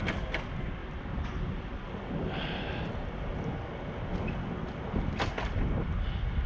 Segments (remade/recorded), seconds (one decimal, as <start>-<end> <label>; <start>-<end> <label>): 0.0-0.8 recorded; 0.8-2.0 remade; 2.0-6.5 recorded